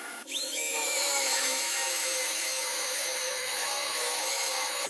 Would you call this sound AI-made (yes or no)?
yes